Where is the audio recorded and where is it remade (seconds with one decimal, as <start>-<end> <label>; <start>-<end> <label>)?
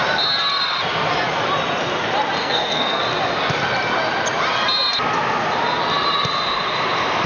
0.0-2.4 recorded; 2.4-3.0 remade; 3.0-7.3 recorded